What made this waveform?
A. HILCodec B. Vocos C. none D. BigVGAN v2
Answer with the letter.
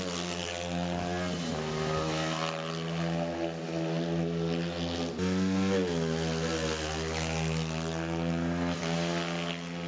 C